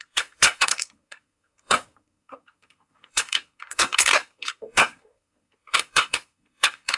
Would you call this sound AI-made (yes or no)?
yes